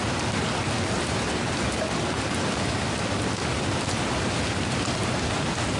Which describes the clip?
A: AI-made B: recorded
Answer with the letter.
B